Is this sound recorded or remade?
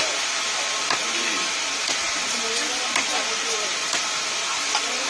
recorded